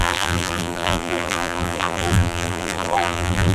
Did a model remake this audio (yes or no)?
yes